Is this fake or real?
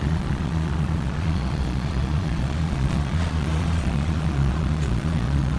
fake